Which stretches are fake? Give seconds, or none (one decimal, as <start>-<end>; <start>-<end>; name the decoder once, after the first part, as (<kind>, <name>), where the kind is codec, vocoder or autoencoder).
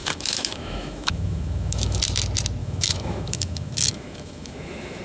0.0-2.0 (autoencoder, DAC-VAE); 2.6-5.0